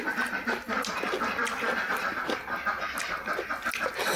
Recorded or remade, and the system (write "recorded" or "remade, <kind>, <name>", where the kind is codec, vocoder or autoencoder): remade, vocoder, BigVGAN v2